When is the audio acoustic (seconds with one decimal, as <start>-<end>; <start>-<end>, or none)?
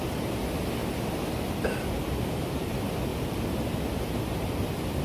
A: 0.0-5.0